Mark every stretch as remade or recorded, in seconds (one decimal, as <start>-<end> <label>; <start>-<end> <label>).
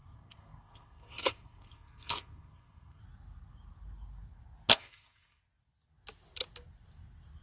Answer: 0.0-3.0 remade; 3.0-4.7 recorded; 4.7-5.4 remade; 5.4-7.4 recorded